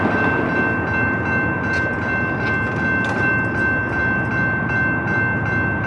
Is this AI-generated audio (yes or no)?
no